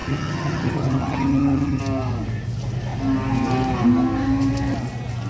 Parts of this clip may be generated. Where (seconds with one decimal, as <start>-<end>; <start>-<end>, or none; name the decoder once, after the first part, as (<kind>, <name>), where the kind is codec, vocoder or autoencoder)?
0.0-1.8 (vocoder, HiFi-GAN)